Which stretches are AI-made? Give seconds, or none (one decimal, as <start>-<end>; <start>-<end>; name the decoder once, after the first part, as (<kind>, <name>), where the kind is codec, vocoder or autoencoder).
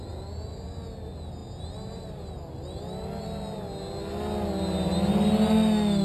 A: none